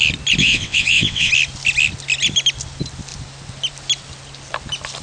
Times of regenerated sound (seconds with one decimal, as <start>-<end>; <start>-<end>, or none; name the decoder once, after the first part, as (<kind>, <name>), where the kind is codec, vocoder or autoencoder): 0.4-1.3 (vocoder, WaveNeXt)